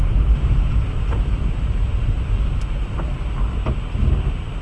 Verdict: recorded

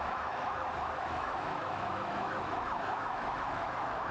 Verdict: remade